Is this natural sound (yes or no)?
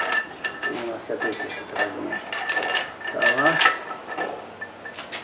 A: yes